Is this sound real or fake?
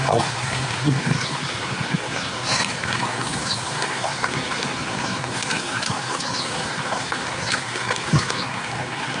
fake